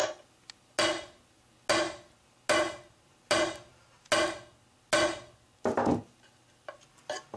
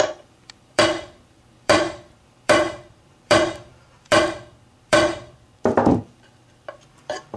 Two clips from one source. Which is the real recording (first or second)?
first